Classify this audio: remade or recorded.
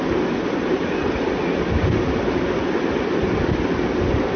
recorded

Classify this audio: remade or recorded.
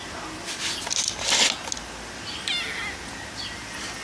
recorded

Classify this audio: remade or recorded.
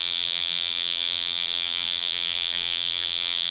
remade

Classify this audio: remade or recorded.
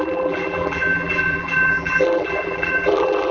remade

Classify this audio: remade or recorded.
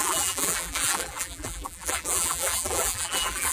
remade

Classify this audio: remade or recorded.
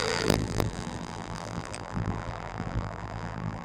remade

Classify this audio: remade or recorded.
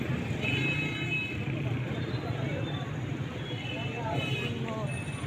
recorded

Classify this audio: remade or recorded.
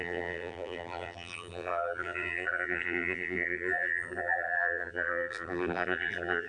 remade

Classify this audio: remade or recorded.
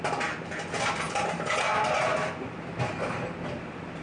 recorded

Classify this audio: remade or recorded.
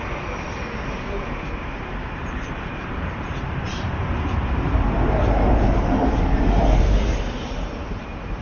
remade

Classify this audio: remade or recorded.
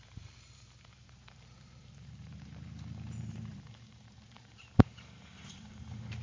remade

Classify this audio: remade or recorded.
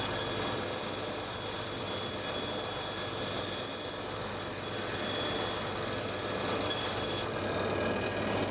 recorded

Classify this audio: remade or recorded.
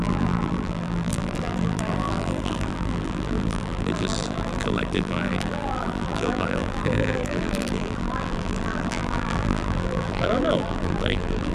remade